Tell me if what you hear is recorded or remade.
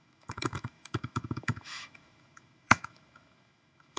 remade